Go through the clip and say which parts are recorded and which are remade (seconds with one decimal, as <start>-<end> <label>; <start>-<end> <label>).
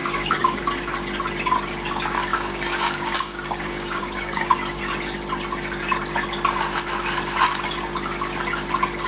0.0-0.6 remade; 0.6-2.3 recorded; 2.3-4.8 remade; 4.8-9.1 recorded